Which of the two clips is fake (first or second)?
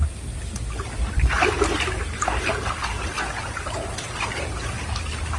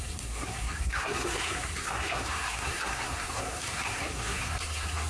second